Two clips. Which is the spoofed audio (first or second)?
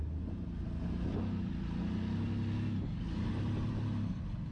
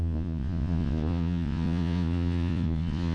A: second